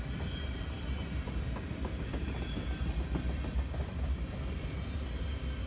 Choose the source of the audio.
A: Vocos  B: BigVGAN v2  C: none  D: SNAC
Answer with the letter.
C